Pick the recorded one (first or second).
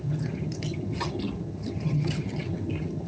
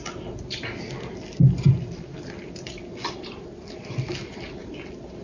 second